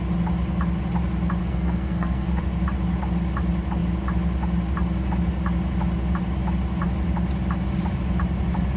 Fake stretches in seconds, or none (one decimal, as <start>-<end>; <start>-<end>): 1.4-2.4

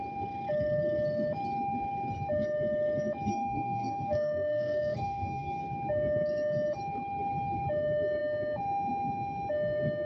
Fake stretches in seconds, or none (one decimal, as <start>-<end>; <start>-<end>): 3.3-5.6

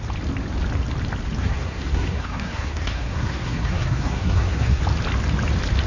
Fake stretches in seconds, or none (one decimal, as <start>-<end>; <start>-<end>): 1.4-4.8

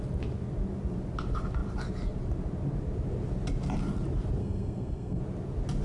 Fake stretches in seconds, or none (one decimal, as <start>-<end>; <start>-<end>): 4.4-5.2

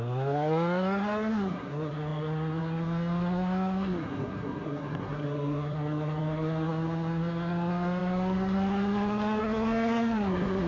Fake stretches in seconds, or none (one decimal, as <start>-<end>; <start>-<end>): 0.0-10.7

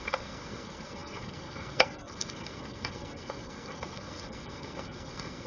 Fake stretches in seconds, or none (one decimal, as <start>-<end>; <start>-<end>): 0.0-5.5